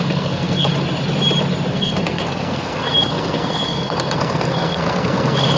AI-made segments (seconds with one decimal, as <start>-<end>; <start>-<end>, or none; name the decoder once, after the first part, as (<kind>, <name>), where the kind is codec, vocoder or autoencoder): 0.0-0.7 (codec, SNAC); 1.7-5.6